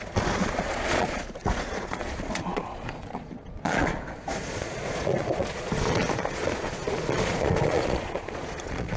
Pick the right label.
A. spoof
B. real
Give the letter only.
A